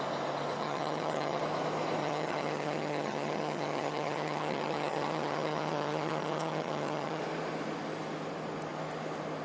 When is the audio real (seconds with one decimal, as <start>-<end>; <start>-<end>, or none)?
0.0-0.6; 1.4-2.0; 7.2-9.4